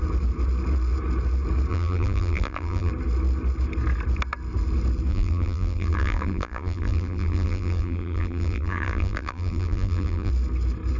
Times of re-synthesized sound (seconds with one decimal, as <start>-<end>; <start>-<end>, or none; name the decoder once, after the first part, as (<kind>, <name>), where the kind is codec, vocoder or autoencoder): 1.7-2.9 (vocoder, BigVGAN v2); 5.1-10.3